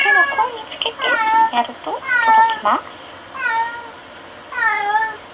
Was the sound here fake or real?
real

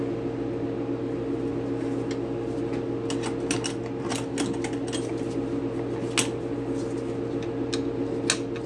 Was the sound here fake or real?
real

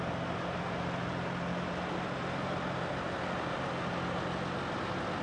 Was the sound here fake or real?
real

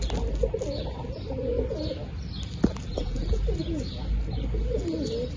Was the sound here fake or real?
real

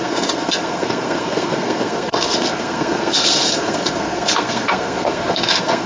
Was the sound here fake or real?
fake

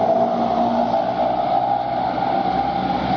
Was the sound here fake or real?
real